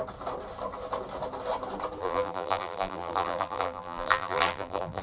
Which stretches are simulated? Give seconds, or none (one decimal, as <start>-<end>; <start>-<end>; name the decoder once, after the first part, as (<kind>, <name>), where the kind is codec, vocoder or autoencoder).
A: 2.0-5.0 (vocoder, BigVGAN v2)